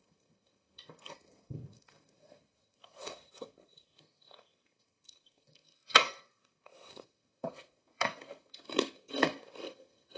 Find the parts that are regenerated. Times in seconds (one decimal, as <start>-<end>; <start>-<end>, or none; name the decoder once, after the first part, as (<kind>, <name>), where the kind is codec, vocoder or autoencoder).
0.0-10.2 (codec, SNAC)